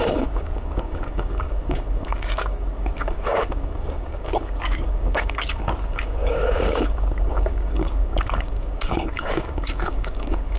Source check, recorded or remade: remade